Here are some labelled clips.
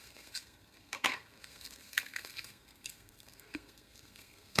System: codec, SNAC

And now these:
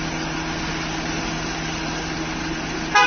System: none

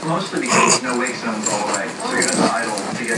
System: none